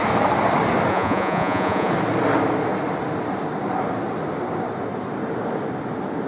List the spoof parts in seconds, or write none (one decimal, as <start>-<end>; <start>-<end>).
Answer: 0.9-1.9